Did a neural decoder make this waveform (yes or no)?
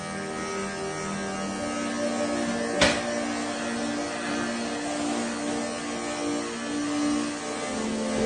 no